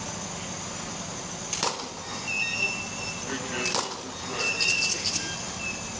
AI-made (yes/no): no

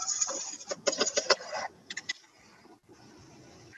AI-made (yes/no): no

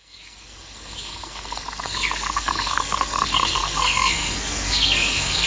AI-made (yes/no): yes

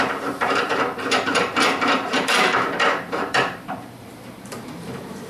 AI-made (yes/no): yes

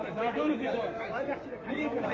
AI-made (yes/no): yes